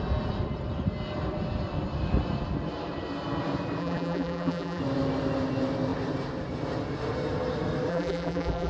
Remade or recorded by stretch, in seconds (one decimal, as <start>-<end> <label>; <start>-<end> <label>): 0.0-3.8 recorded; 3.8-4.8 remade; 4.8-7.9 recorded; 7.9-8.7 remade